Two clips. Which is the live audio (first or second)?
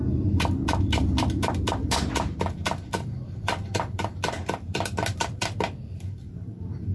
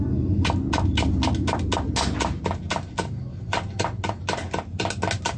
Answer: second